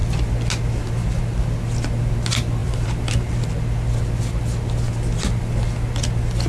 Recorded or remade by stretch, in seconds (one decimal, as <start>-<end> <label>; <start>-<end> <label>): 0.0-2.6 recorded; 2.6-3.1 remade; 3.1-6.5 recorded